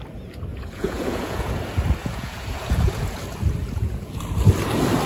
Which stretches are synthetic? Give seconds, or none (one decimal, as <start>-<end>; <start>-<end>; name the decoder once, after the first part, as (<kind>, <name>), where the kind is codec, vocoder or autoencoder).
0.5-1.5 (vocoder, Vocos); 2.0-3.2; 3.6-4.2